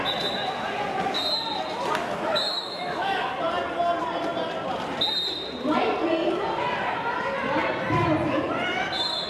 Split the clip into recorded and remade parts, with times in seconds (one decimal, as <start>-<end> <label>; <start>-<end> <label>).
0.0-2.0 recorded; 2.0-3.3 remade; 3.3-9.3 recorded

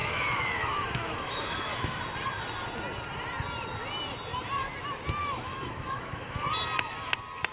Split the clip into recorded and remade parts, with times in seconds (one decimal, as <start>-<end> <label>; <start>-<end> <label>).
0.0-2.0 remade; 2.0-5.2 recorded; 5.2-6.5 remade; 6.5-7.5 recorded

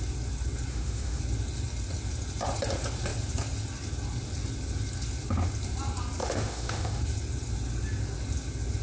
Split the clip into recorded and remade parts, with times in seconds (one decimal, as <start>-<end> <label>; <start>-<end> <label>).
0.0-0.7 recorded; 0.7-1.2 remade; 1.2-6.2 recorded; 6.2-7.0 remade; 7.0-8.8 recorded

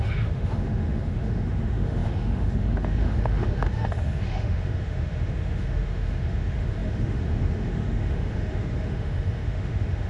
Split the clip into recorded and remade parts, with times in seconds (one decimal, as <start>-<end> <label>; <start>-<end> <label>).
0.0-10.1 remade